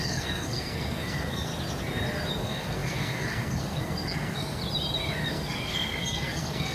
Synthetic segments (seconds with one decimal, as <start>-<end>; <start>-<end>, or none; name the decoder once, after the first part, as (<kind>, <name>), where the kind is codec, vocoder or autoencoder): 0.0-1.5 (codec, SNAC); 2.3-4.6; 5.3-6.7